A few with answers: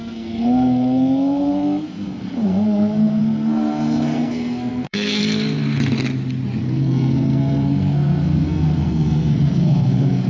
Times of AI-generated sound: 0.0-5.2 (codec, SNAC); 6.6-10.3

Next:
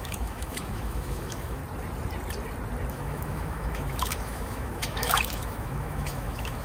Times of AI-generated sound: 0.0-1.6 (autoencoder, DAC-VAE); 2.9-6.6

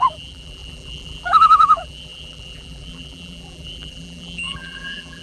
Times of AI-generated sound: 0.0-5.2 (vocoder, BigVGAN v2)

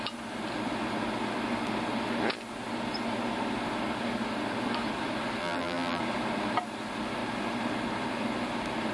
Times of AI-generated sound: 5.4-6.0 (vocoder, BigVGAN v2)

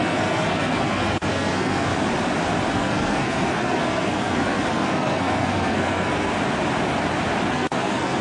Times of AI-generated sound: 0.0-1.9 (codec, SNAC); 2.7-6.3; 7.5-8.2

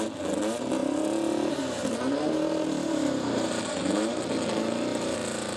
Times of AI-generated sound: 0.8-4.2 (vocoder, BigVGAN v2); 4.9-5.6

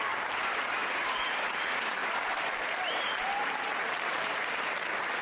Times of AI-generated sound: 0.8-1.5 (vocoder, BigVGAN v2); 2.0-5.2